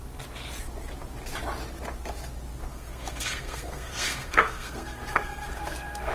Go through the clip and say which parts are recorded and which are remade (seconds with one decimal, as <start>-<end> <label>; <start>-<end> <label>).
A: 0.0-2.7 recorded; 2.7-6.1 remade